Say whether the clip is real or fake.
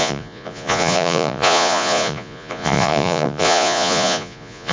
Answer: fake